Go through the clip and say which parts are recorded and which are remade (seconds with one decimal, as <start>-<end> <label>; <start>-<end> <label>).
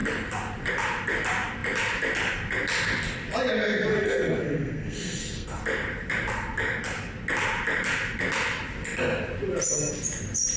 0.0-3.9 recorded; 3.9-5.6 remade; 5.6-10.6 recorded